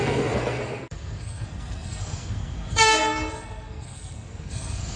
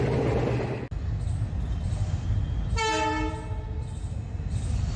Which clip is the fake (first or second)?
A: first